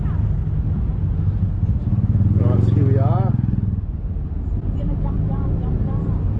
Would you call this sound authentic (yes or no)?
yes